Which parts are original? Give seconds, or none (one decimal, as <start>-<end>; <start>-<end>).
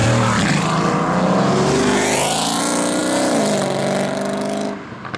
0.0-5.2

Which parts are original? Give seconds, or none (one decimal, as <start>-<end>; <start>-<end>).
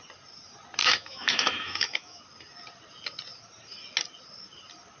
0.0-0.8; 2.2-5.0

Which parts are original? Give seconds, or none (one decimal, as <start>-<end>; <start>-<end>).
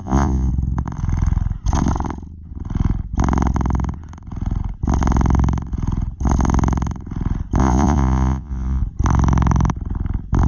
0.5-7.6; 8.8-10.5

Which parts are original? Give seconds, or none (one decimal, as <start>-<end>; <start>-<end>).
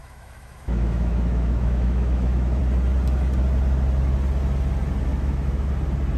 2.6-5.1; 5.7-6.2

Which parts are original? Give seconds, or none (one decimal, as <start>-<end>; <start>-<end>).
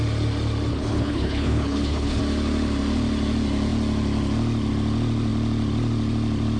0.0-0.7; 2.2-6.6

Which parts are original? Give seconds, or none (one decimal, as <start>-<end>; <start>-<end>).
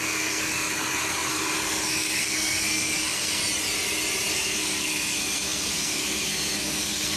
3.4-4.3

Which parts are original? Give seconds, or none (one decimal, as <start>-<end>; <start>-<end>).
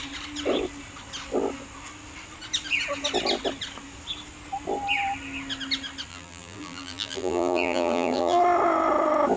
0.0-6.1; 8.4-9.4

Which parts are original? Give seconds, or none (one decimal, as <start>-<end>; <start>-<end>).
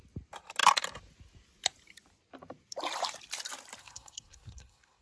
0.0-3.8